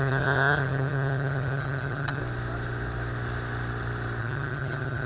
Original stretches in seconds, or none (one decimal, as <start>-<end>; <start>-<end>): 2.2-4.2